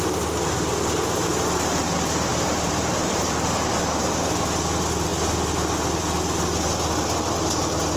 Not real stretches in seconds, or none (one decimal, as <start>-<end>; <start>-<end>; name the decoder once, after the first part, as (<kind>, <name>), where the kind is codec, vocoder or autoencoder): 2.3-3.7 (vocoder, BigVGAN v2)